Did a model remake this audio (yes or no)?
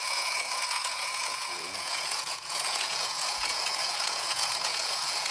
yes